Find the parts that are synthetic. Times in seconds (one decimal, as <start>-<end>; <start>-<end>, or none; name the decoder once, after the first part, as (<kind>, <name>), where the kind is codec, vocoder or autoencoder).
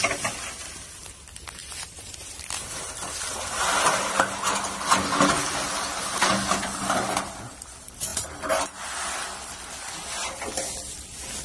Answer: 1.6-2.8 (vocoder, BigVGAN v2); 8.1-9.0